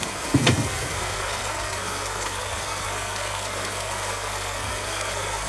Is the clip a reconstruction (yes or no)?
yes